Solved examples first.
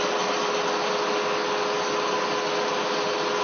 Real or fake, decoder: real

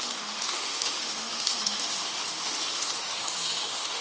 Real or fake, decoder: fake, autoencoder, DAC-VAE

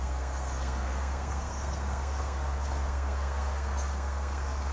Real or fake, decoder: fake, codec, SNAC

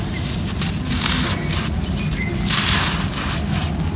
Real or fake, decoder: real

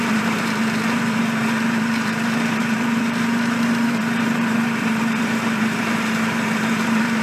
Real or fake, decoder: fake, vocoder, BigVGAN v2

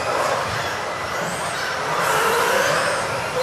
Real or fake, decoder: real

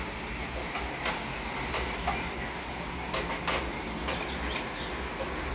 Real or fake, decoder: real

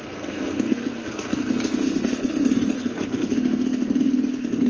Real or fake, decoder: fake, codec, SNAC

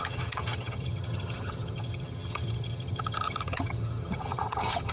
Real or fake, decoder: fake, vocoder, HiFi-GAN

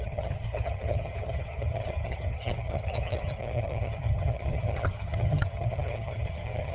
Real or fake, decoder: fake, vocoder, HiFi-GAN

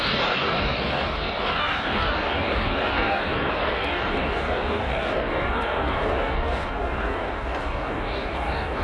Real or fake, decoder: fake, codec, DAC